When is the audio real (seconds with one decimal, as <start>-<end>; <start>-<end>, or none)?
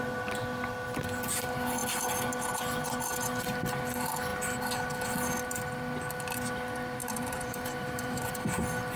0.0-7.0; 8.3-9.0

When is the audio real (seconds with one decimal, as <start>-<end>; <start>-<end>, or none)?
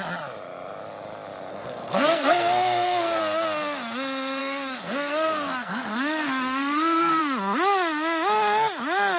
0.0-1.5; 3.2-4.4; 7.2-9.2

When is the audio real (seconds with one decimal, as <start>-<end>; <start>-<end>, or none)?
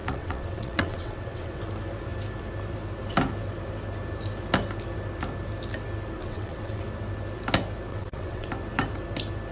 1.6-6.2; 6.8-7.9; 8.5-9.5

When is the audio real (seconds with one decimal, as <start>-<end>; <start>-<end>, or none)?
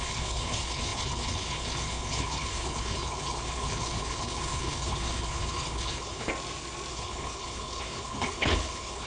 6.3-6.9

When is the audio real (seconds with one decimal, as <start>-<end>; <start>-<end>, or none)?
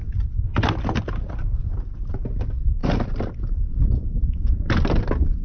0.0-2.8; 4.8-5.4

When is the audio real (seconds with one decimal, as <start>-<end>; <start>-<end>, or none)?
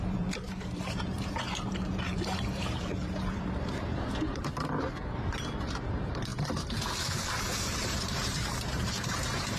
6.3-7.4